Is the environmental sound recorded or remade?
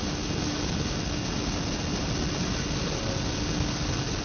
recorded